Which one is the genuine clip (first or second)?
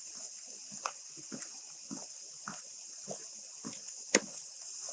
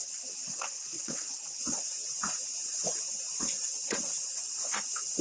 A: first